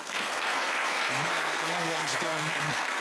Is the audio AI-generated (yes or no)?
yes